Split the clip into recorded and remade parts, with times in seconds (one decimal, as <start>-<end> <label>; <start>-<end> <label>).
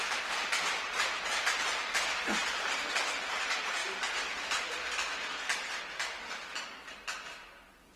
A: 0.0-3.8 recorded; 3.8-5.8 remade; 5.8-8.0 recorded